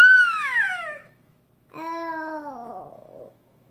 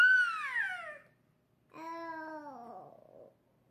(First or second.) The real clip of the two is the second